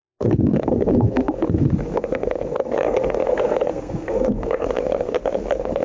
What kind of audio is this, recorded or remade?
remade